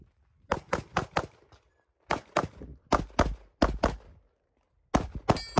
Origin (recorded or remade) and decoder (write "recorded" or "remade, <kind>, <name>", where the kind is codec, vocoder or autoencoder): recorded